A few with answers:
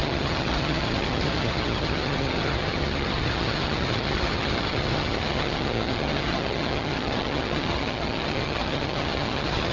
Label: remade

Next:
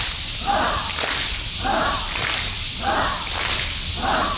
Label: recorded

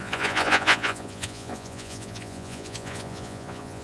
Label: remade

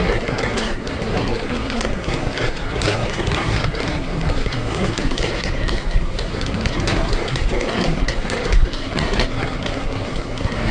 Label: remade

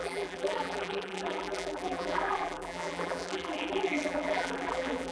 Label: remade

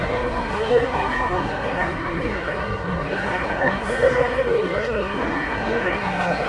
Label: remade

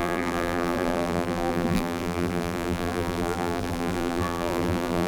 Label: remade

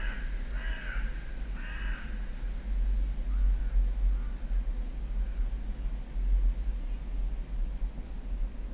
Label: recorded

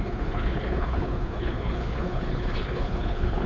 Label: remade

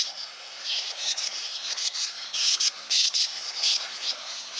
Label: remade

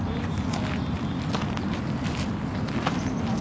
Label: recorded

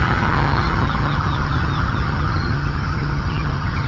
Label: remade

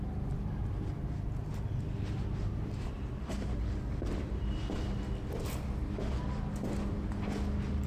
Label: recorded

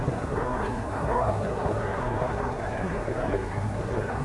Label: remade